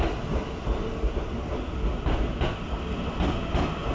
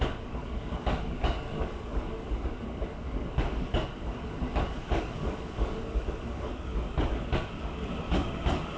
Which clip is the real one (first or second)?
first